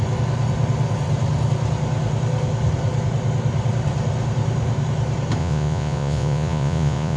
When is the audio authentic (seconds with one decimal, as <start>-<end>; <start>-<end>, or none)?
0.0-5.4